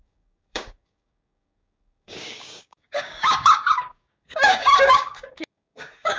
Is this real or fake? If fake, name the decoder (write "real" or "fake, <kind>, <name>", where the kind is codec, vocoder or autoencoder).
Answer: fake, codec, DAC